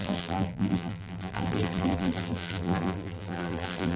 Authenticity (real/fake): fake